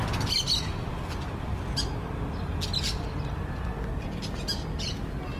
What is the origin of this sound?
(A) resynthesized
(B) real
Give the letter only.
B